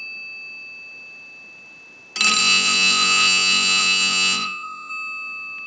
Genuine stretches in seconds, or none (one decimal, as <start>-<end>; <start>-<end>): 0.0-2.4; 4.9-5.7